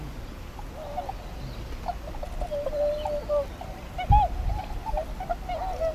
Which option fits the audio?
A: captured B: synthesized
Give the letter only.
A